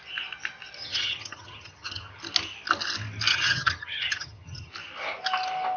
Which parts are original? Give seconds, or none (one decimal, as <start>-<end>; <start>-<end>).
0.0-0.8; 2.2-3.3; 4.7-5.8